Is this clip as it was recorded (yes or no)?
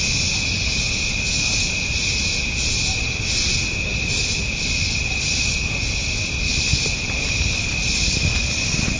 yes